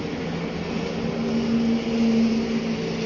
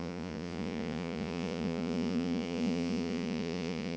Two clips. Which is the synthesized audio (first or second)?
second